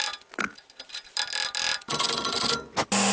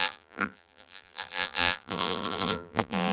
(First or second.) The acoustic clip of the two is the first